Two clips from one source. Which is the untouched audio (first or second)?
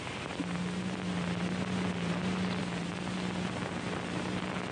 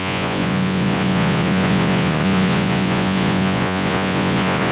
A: first